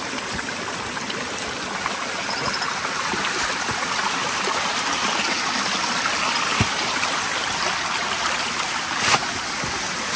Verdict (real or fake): real